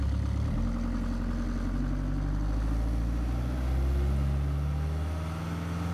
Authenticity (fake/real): real